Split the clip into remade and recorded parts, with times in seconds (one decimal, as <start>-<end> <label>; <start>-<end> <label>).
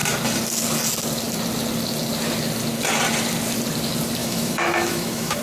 0.0-4.2 recorded; 4.2-5.4 remade